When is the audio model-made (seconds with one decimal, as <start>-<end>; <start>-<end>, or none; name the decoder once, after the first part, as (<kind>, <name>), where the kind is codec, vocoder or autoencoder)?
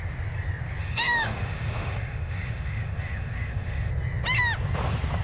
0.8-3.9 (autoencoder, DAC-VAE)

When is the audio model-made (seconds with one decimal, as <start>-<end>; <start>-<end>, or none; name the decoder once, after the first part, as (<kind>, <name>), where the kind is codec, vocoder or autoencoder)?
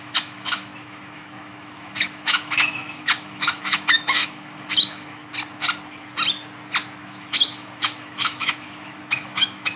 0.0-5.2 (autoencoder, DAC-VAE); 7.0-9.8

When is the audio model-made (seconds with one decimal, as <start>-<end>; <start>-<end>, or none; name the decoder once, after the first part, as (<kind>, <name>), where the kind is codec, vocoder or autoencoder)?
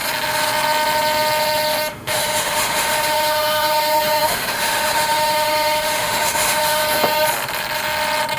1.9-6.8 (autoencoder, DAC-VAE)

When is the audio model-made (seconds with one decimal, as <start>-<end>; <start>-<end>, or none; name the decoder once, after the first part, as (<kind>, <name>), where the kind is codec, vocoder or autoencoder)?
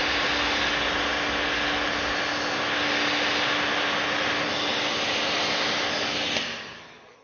none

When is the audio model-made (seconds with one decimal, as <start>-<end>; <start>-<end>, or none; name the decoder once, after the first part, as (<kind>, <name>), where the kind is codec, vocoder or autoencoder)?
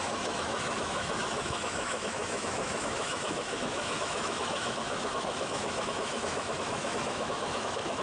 0.0-8.0 (autoencoder, DAC-VAE)